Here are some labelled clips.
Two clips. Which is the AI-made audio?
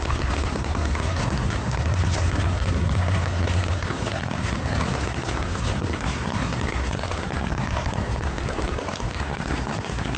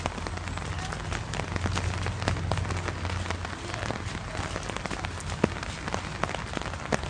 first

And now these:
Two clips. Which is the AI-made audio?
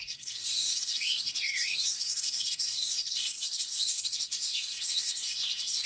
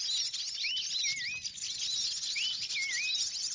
first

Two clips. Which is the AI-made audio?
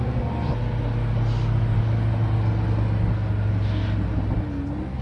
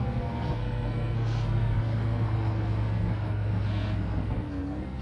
second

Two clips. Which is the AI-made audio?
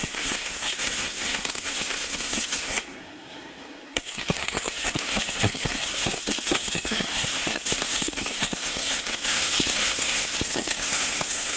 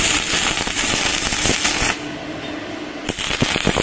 first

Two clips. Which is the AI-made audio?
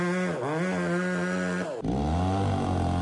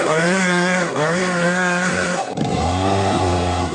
second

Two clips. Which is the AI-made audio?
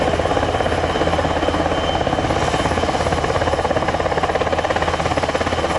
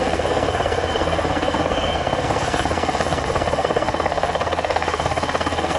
second